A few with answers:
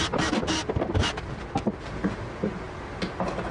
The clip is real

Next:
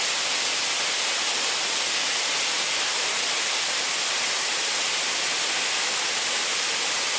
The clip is real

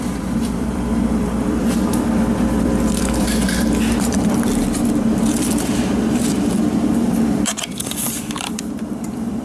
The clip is fake